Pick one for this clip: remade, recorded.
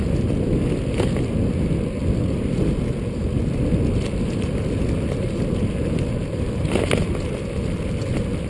recorded